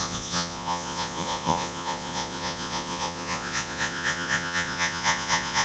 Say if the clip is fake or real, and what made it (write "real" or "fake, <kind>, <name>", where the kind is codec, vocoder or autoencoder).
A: fake, vocoder, Vocos